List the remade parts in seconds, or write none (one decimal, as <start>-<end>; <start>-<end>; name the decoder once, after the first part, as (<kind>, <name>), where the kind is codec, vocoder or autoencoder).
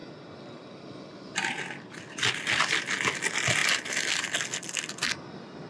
none